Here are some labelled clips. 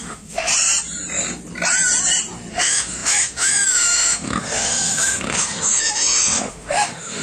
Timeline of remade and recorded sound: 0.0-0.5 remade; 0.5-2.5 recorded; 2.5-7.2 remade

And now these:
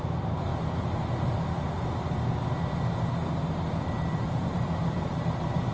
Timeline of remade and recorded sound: 0.0-0.5 remade; 0.5-3.9 recorded; 3.9-5.7 remade

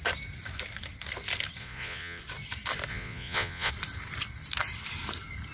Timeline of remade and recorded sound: 0.0-1.6 recorded; 1.6-2.2 remade; 2.2-2.9 recorded; 2.9-3.7 remade; 3.7-5.5 recorded

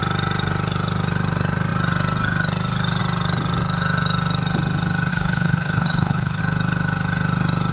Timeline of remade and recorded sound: 0.0-5.1 recorded; 5.1-6.4 remade; 6.4-7.7 recorded

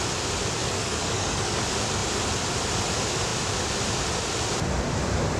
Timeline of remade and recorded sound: 0.0-0.6 recorded; 0.6-1.6 remade; 1.6-5.4 recorded

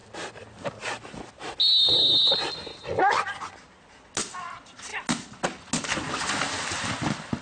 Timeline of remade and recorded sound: 0.0-7.4 recorded